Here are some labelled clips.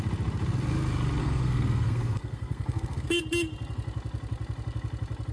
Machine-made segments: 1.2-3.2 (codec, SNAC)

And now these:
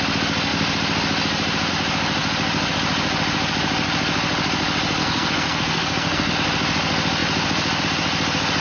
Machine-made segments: 5.0-6.3 (codec, SNAC)

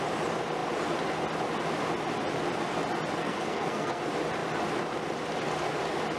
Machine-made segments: 3.2-4.0 (codec, SNAC)

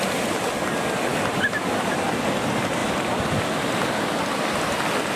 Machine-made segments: none

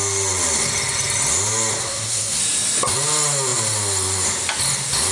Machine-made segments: 1.8-2.4 (codec, SNAC)